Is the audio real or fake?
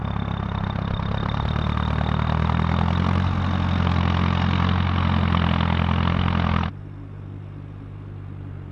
real